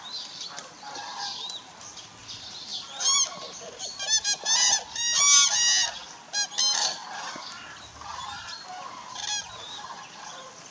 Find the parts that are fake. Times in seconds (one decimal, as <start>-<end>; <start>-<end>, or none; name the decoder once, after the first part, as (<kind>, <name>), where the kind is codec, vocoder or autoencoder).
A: none